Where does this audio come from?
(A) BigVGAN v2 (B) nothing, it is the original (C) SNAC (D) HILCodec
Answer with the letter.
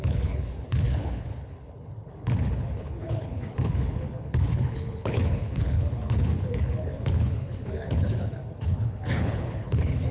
D